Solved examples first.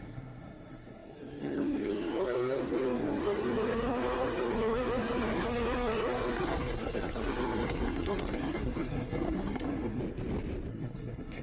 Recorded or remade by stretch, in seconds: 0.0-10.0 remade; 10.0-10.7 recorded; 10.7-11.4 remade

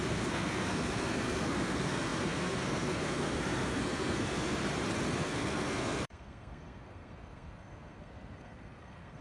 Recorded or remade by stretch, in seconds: 0.0-4.6 remade; 4.6-5.2 recorded; 5.2-9.2 remade

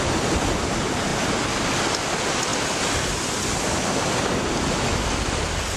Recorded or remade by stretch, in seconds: 0.0-5.8 recorded

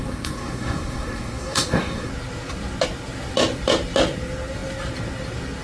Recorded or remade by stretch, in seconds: 0.0-2.1 remade; 2.1-5.6 recorded

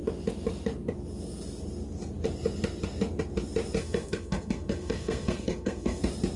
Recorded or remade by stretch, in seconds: 0.0-3.8 recorded; 3.8-6.0 remade; 6.0-6.4 recorded

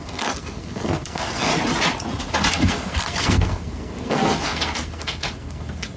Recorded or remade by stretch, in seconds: 0.0-1.5 remade; 1.5-2.5 recorded; 2.5-6.0 remade

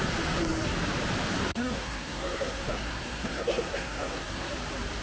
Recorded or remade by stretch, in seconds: 0.0-1.5 recorded; 1.5-4.5 remade; 4.5-5.0 recorded

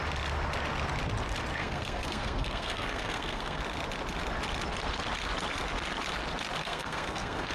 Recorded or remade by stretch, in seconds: 0.0-1.6 recorded; 1.6-3.6 remade; 3.6-6.6 recorded; 6.6-7.5 remade